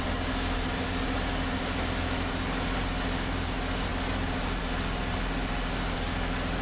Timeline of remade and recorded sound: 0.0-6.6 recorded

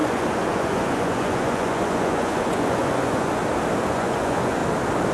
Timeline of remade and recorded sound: 0.0-3.4 remade; 3.4-3.9 recorded; 3.9-4.6 remade; 4.6-5.1 recorded